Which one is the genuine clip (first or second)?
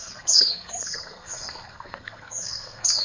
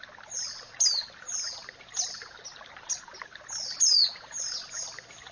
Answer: second